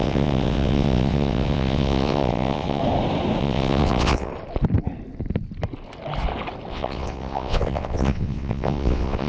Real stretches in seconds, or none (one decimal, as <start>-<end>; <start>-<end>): 2.8-3.4; 4.3-6.7